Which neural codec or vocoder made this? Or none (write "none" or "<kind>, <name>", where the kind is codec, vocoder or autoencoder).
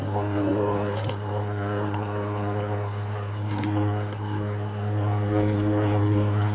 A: codec, SNAC